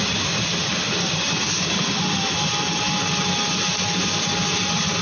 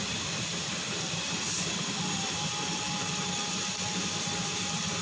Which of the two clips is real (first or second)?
first